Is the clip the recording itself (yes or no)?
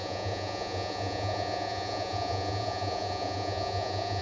no